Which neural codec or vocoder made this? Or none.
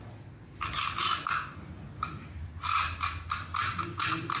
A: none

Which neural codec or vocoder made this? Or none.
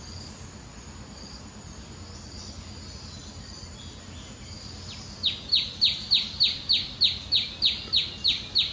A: none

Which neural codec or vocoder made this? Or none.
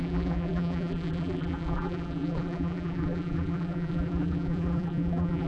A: vocoder, BigVGAN v2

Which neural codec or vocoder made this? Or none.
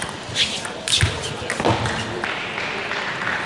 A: none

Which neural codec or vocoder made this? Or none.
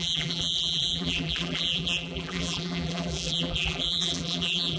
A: vocoder, BigVGAN v2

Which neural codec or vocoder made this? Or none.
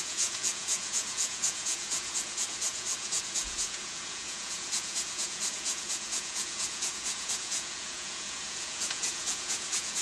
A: vocoder, Vocos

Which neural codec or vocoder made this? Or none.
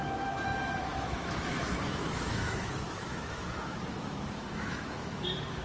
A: autoencoder, DAC-VAE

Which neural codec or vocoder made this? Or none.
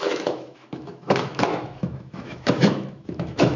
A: autoencoder, DAC-VAE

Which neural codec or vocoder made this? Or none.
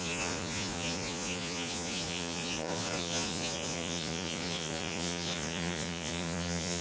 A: vocoder, Vocos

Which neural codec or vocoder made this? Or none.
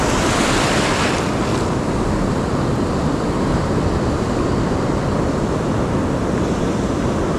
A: none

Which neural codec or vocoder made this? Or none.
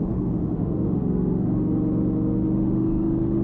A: autoencoder, DAC-VAE